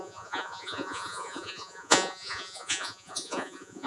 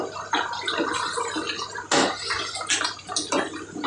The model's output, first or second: first